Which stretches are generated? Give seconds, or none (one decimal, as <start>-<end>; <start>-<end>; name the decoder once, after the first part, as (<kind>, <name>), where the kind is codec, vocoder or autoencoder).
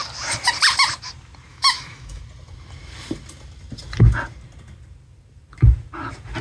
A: 1.5-2.2 (autoencoder, DAC-VAE)